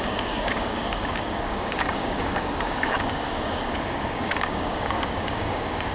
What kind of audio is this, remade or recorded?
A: remade